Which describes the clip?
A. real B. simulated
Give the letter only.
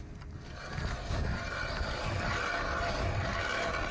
A